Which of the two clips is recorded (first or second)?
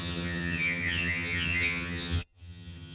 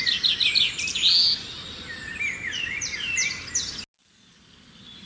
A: second